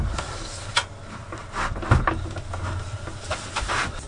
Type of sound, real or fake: real